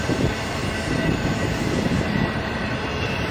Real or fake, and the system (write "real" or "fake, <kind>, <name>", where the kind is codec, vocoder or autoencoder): fake, vocoder, BigVGAN v2